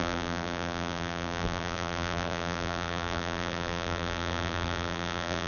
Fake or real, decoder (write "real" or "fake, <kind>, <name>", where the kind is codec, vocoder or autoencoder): fake, vocoder, BigVGAN v2